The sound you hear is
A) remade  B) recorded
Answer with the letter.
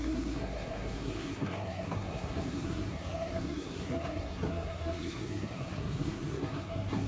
A